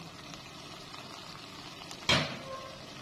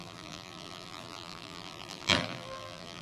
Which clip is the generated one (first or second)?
second